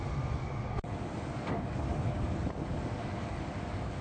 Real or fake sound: fake